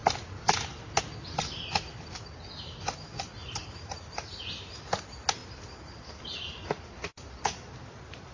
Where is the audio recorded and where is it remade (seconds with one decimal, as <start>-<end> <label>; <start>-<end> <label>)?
0.0-8.3 recorded